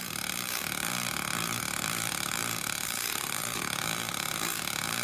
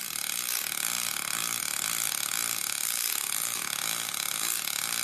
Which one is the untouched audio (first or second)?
second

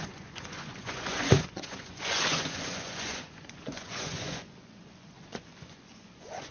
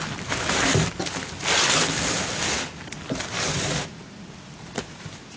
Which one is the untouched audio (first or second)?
second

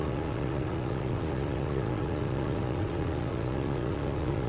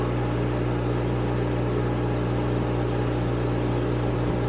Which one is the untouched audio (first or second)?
second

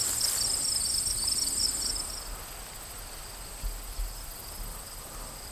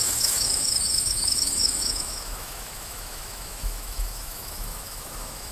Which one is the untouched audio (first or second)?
first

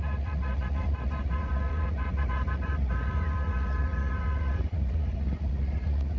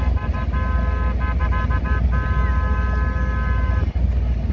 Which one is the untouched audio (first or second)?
second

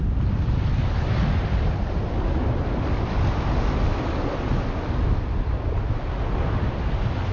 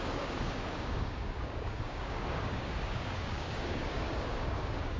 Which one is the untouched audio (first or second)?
first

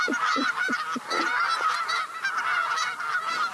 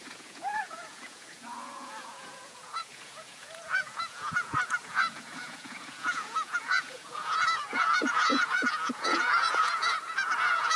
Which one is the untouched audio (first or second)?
first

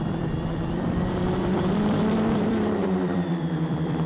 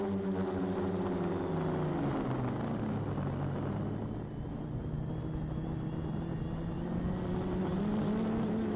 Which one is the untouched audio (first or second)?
second